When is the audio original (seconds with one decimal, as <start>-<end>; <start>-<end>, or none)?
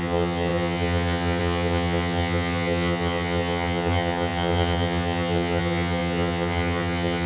none